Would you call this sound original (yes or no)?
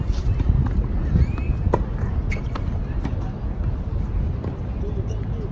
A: yes